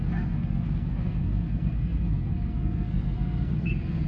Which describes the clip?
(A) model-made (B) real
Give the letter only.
A